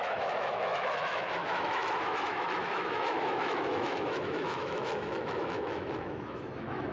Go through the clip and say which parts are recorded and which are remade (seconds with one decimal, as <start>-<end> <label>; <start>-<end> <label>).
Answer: 0.0-6.9 remade

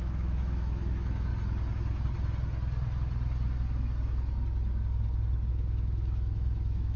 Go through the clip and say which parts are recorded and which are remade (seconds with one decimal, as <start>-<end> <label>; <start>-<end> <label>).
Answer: 0.0-1.3 remade; 1.3-5.5 recorded; 5.5-7.0 remade